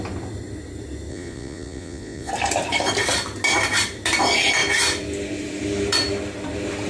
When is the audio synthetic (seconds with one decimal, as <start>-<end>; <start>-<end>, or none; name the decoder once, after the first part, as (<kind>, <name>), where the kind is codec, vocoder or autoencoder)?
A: 1.1-2.3 (vocoder, Vocos)